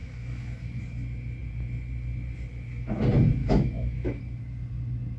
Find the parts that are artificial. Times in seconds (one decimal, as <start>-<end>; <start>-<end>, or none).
0.0-0.8; 3.4-4.2